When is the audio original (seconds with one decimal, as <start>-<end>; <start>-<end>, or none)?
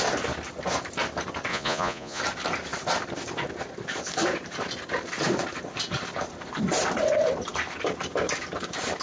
0.0-1.5; 2.2-9.0